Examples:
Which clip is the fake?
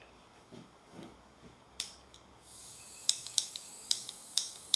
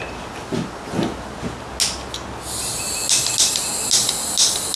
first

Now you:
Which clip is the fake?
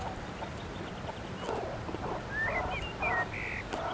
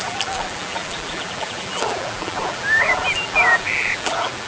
second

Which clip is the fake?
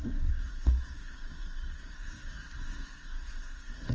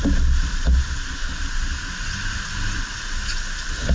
first